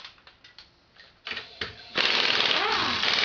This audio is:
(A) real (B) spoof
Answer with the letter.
A